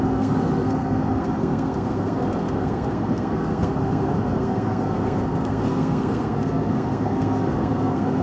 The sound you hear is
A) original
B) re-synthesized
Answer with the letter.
B